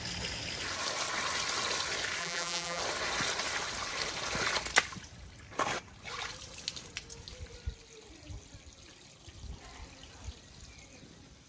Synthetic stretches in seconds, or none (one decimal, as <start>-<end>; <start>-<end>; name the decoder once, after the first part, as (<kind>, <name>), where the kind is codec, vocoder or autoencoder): 2.2-2.8 (vocoder, BigVGAN v2)